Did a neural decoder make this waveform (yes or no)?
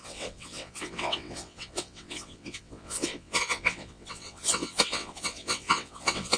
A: yes